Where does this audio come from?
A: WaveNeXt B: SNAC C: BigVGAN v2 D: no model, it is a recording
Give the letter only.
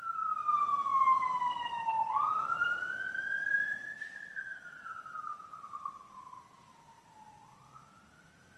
C